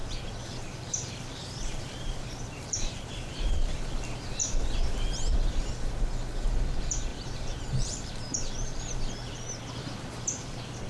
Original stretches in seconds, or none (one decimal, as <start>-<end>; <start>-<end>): 3.8-4.4; 5.7-7.1; 8.8-10.9